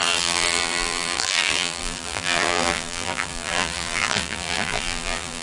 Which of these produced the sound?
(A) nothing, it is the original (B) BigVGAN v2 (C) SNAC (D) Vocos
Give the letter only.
B